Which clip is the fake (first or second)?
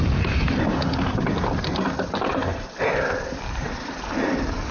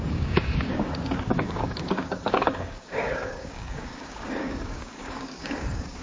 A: second